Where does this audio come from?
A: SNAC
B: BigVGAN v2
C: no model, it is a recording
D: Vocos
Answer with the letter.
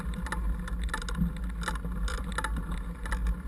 C